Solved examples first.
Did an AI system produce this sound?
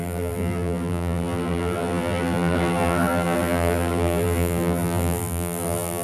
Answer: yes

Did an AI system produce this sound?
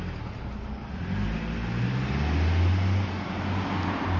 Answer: no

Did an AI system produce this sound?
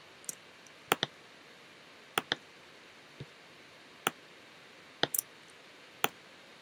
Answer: no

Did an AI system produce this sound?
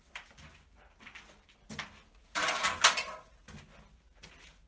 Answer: no